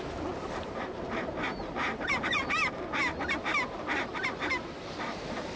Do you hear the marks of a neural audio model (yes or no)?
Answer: yes